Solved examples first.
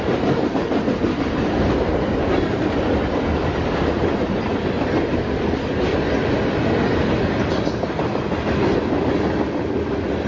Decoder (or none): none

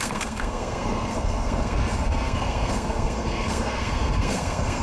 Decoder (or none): codec, SNAC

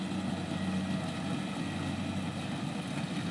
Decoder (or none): none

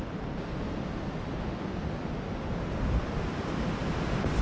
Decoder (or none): none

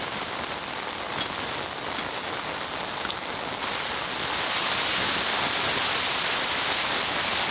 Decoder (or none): none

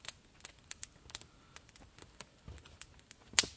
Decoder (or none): none